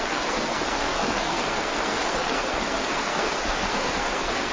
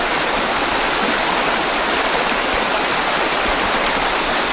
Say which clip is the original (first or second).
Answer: second